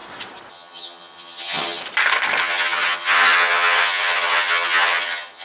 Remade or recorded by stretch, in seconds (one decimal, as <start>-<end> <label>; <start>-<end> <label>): 0.0-0.5 recorded; 0.5-1.8 remade; 1.8-2.4 recorded; 2.4-5.4 remade